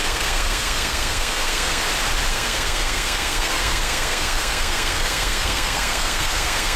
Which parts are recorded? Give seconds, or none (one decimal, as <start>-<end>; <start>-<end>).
1.8-2.3